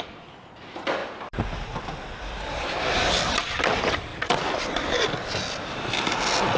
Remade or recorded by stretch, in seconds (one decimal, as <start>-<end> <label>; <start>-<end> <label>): 0.0-6.6 recorded